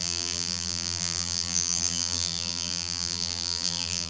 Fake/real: fake